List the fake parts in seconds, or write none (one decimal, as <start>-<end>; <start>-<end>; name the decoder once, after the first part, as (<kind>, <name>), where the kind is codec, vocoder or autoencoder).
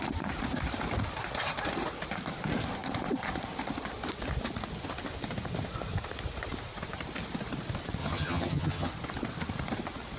8.0-8.9 (vocoder, HiFi-GAN)